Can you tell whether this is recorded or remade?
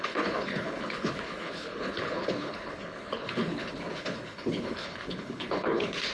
remade